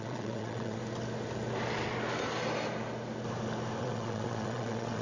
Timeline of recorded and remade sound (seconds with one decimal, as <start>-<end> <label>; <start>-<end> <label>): 0.0-0.8 remade; 0.8-3.8 recorded; 3.8-5.0 remade